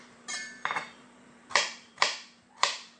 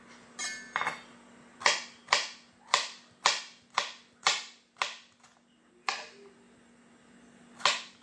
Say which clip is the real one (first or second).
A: second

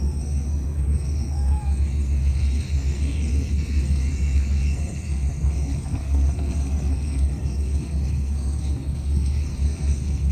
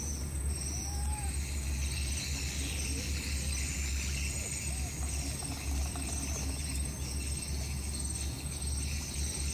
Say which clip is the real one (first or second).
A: second